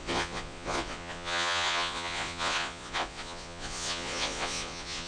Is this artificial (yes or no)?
yes